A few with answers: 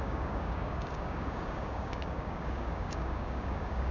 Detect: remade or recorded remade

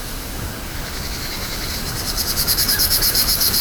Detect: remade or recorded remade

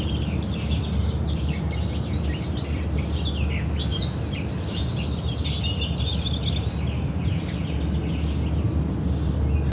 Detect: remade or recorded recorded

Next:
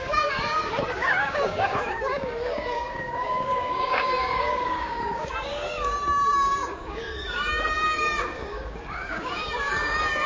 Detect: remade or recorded remade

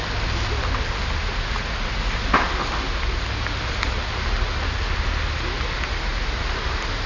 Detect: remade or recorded recorded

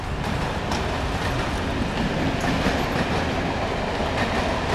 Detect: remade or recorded recorded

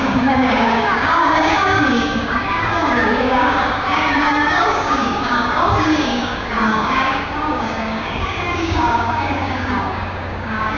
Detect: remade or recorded remade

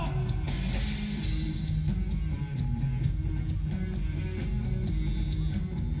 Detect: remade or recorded recorded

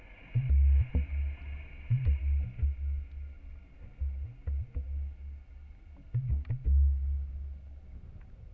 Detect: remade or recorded recorded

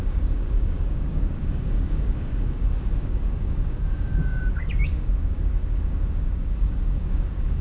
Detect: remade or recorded remade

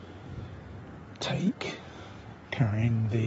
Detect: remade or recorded remade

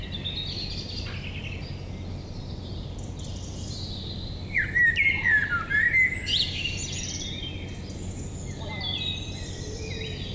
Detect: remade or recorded recorded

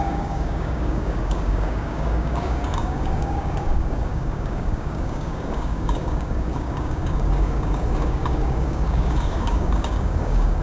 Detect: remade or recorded remade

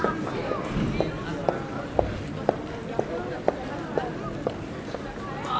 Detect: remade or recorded recorded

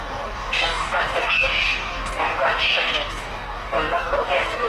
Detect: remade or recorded remade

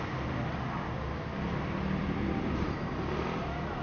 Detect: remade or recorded recorded